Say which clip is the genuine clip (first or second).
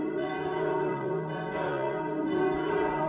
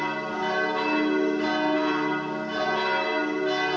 second